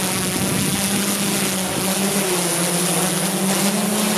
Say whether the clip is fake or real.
real